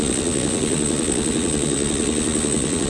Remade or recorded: remade